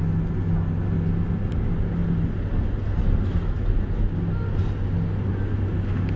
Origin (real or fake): real